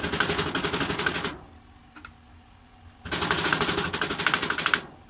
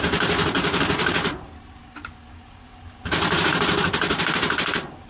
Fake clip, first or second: second